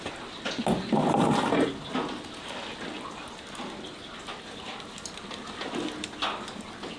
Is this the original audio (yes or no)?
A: yes